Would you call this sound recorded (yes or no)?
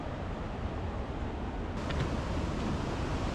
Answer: yes